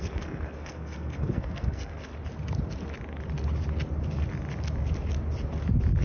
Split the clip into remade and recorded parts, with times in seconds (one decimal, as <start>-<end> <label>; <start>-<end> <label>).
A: 0.0-2.1 remade; 2.1-6.0 recorded